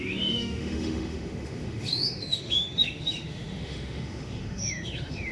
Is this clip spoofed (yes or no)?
yes